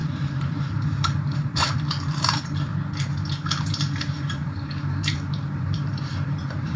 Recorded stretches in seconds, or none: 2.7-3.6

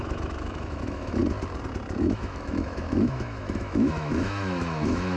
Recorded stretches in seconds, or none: 1.2-2.0

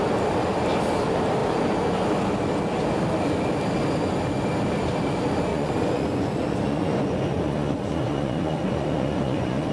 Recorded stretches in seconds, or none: 0.0-5.5

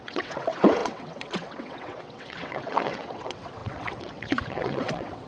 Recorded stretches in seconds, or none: none

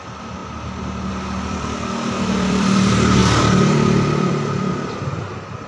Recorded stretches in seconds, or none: none